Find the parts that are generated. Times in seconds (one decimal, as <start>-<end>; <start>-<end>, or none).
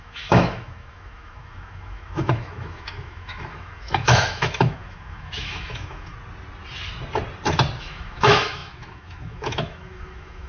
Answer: 0.0-6.1; 7.8-10.5